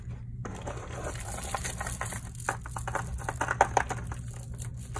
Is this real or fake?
real